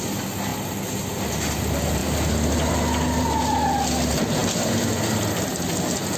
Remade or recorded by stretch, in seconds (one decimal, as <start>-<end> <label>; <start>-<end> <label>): 0.0-6.2 recorded